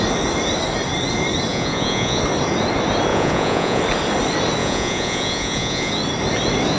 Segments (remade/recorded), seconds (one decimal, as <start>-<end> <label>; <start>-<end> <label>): 0.0-1.5 recorded; 1.5-2.2 remade; 2.2-3.1 recorded; 3.1-3.8 remade; 3.8-4.6 recorded; 4.6-5.9 remade; 5.9-6.8 recorded